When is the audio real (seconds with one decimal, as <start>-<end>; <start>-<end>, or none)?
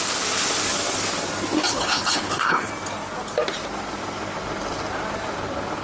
0.0-1.7; 2.7-5.8